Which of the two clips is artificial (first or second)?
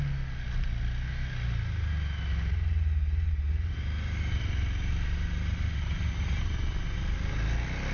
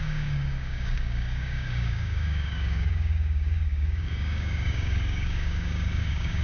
second